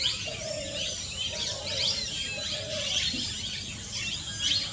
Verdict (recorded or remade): recorded